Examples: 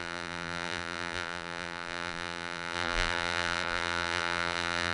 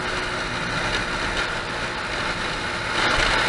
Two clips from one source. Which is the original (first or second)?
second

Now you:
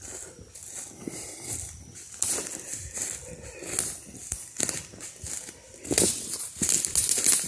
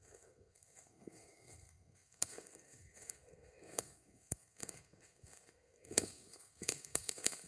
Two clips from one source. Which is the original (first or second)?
first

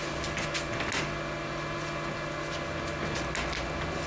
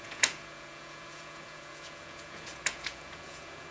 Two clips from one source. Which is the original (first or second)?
first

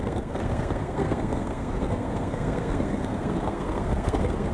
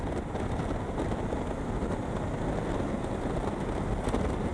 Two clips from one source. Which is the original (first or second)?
second